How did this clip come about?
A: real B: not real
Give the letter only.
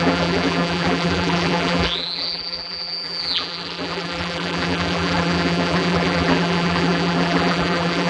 B